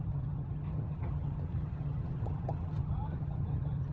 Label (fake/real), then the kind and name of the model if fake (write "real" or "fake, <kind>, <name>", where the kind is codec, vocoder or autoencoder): fake, vocoder, HiFi-GAN